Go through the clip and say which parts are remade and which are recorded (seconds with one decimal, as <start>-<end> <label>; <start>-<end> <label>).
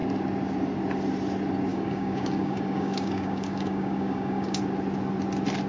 0.0-1.7 recorded; 1.7-4.6 remade; 4.6-5.7 recorded